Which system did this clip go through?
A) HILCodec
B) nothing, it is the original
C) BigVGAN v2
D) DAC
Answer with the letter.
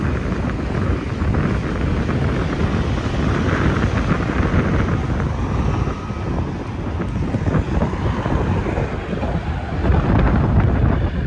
B